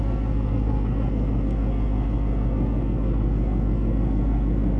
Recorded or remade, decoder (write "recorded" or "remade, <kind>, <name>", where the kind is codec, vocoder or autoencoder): remade, codec, SNAC